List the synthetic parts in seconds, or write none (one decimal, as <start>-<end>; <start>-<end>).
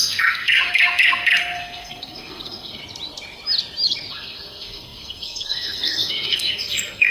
0.0-2.8; 4.1-7.1